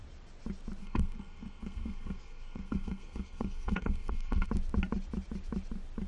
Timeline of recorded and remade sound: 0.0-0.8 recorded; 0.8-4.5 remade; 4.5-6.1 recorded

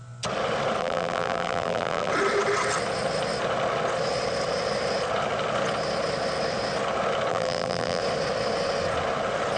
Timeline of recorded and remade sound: 0.0-0.8 recorded; 0.8-2.1 remade; 2.1-7.3 recorded; 7.3-8.0 remade; 8.0-9.6 recorded

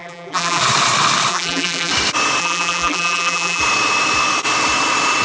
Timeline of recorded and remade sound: 0.0-0.6 remade; 0.6-1.3 recorded; 1.3-1.9 remade; 1.9-2.4 recorded; 2.4-3.6 remade; 3.6-5.2 recorded

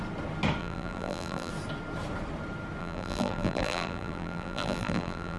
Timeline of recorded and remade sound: 0.0-0.6 recorded; 0.6-1.5 remade; 1.5-2.8 recorded; 2.8-5.4 remade

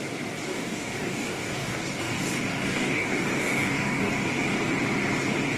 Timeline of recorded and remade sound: 0.0-0.5 recorded; 0.5-2.1 remade; 2.1-2.5 recorded; 2.5-4.2 remade; 4.2-5.6 recorded